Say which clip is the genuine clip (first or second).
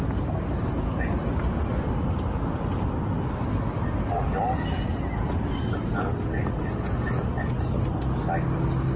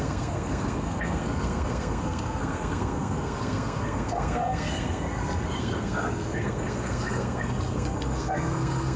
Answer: first